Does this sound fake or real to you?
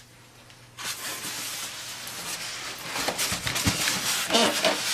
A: real